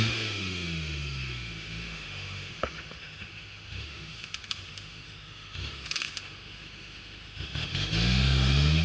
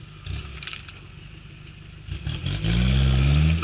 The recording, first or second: second